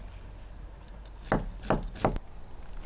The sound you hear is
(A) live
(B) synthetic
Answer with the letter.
A